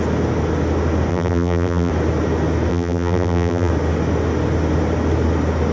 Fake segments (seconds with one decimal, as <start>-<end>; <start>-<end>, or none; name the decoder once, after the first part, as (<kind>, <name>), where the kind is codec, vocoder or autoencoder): 1.1-1.9 (vocoder, BigVGAN v2); 2.7-3.7